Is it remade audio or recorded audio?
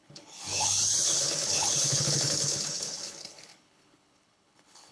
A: remade